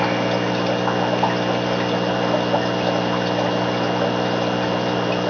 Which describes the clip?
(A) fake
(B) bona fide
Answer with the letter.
B